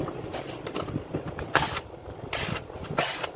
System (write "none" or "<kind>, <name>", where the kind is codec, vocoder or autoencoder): vocoder, BigVGAN v2